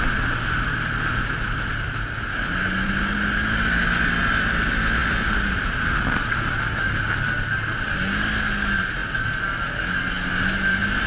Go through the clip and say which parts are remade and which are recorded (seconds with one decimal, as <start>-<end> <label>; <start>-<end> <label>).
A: 0.0-11.1 recorded